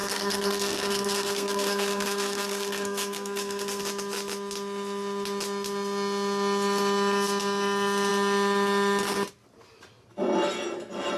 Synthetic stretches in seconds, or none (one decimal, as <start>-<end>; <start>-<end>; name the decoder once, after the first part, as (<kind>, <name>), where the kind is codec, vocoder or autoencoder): 0.0-3.8 (codec, SNAC)